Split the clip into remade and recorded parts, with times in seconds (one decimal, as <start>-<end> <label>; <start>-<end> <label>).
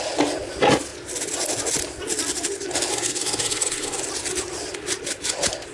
0.0-2.9 recorded; 2.9-4.0 remade; 4.0-5.7 recorded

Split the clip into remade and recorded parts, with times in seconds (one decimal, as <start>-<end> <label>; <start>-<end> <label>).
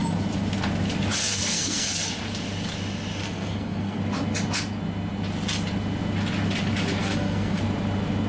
0.0-1.2 recorded; 1.2-2.2 remade; 2.2-3.2 recorded; 3.2-4.0 remade; 4.0-7.0 recorded; 7.0-7.6 remade; 7.6-8.3 recorded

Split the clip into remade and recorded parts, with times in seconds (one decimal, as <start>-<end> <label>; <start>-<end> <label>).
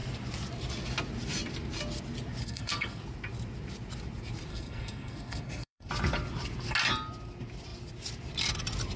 0.0-2.4 recorded; 2.4-3.0 remade; 3.0-4.5 recorded; 4.5-5.9 remade; 5.9-9.0 recorded